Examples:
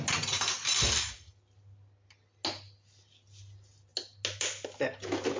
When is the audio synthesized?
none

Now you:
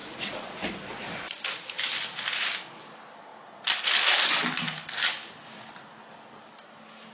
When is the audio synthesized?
none

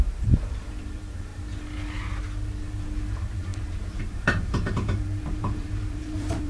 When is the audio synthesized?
0.0-1.3 (vocoder, BigVGAN v2); 3.1-6.5

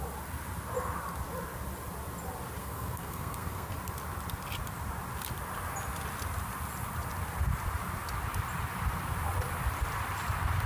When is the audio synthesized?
2.6-3.7 (codec, SNAC)

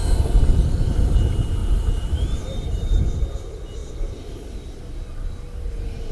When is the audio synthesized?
1.6-3.0 (vocoder, BigVGAN v2)